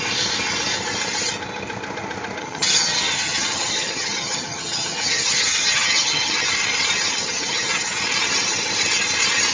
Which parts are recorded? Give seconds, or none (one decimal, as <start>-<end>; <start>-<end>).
0.0-2.4; 6.5-7.2; 8.0-9.5